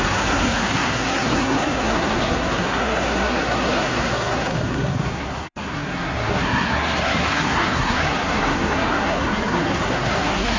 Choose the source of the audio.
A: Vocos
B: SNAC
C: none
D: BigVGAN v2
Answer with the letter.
B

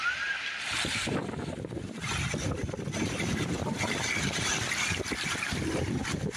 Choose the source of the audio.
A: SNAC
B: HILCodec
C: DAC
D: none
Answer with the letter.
D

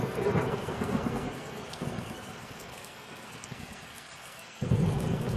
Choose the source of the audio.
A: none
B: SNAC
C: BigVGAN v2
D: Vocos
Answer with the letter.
B